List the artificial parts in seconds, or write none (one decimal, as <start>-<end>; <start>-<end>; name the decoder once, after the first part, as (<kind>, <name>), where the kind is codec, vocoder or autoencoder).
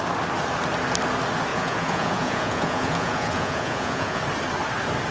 1.5-4.2 (vocoder, Vocos)